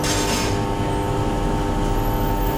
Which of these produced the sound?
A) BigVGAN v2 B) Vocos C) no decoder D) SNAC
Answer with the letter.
C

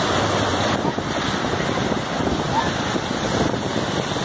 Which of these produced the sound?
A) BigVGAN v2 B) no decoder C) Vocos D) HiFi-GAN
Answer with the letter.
B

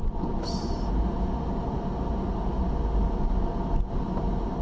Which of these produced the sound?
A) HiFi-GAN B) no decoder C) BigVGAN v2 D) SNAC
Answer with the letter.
B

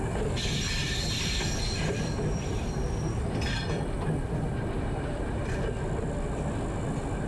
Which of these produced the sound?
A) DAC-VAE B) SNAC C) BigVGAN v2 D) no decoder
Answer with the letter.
C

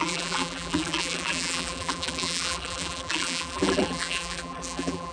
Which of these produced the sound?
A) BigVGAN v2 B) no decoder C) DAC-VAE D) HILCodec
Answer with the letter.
A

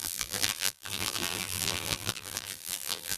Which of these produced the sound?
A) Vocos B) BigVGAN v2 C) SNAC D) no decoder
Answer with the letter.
B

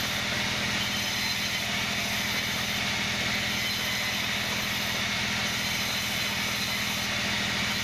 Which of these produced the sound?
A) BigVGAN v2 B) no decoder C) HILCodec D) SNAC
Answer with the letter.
B